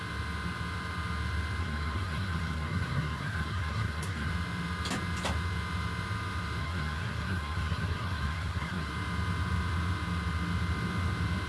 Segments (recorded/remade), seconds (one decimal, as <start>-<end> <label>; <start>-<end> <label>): 0.0-1.6 recorded; 1.6-4.3 remade; 4.3-6.6 recorded; 6.6-8.9 remade; 8.9-11.5 recorded